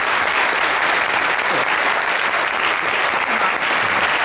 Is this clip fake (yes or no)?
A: no